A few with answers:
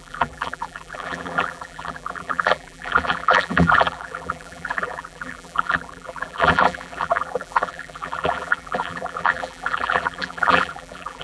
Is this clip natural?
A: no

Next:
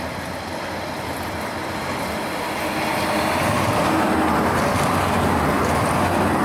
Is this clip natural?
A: yes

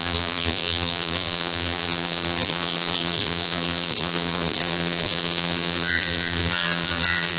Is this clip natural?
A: no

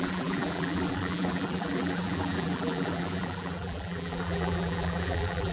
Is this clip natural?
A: no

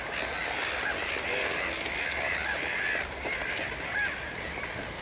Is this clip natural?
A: yes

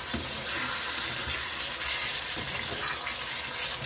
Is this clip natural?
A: yes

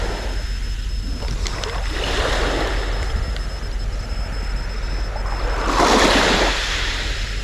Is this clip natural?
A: yes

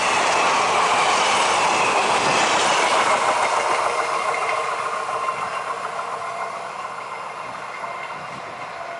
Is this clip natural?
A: yes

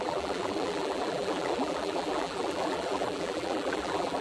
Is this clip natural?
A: no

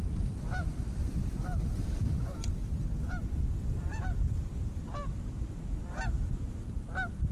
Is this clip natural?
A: no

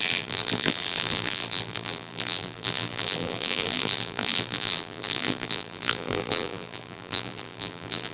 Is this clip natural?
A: no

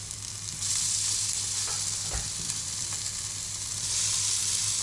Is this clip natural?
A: no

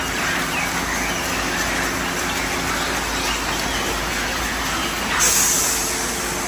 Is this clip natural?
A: yes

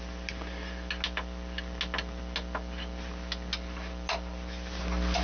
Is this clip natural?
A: yes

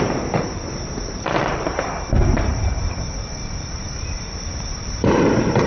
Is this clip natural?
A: no